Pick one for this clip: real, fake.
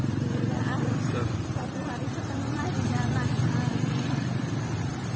fake